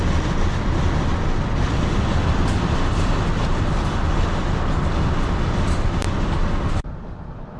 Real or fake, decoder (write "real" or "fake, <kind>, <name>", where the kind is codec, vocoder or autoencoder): real